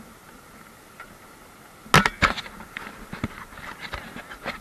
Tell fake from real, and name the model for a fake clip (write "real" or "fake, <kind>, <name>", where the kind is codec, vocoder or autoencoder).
real